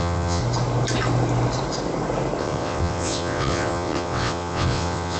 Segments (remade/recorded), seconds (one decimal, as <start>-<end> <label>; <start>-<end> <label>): 0.0-0.4 remade; 0.4-2.4 recorded; 2.4-5.2 remade